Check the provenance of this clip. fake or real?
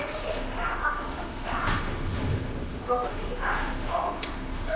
fake